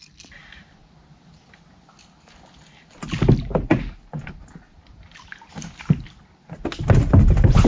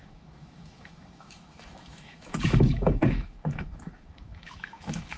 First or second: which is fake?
second